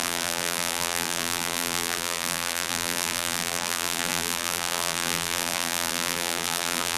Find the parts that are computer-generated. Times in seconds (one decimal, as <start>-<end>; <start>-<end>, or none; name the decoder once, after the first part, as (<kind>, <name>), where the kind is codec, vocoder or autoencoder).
0.0-7.0 (vocoder, BigVGAN v2)